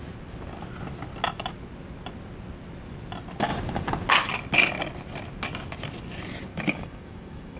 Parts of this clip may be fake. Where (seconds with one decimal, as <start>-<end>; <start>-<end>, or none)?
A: 6.5-7.6